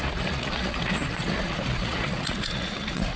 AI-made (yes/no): yes